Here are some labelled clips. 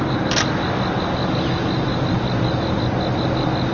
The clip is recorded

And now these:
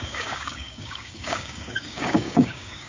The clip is remade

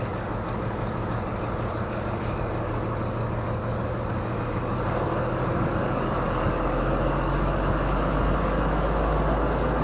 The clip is remade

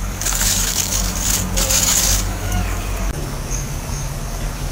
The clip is remade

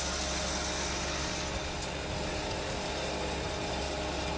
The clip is recorded